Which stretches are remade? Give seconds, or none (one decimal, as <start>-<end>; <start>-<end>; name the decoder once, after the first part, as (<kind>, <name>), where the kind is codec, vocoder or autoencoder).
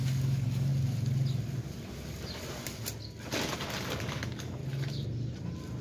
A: 0.0-0.7 (codec, DAC); 4.0-4.6